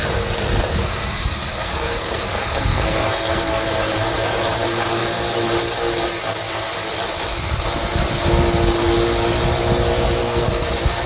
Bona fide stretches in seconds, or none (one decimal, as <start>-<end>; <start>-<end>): 0.0-1.5; 3.7-10.2; 10.7-11.1